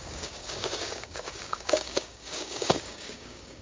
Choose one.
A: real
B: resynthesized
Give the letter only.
B